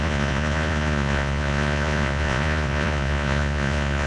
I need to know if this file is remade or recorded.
remade